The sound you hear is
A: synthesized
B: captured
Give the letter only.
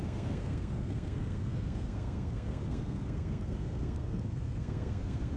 A